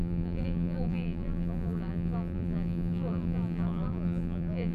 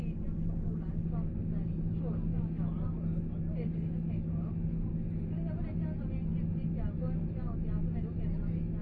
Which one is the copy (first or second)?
first